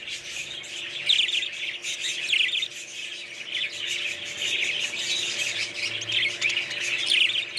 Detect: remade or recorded recorded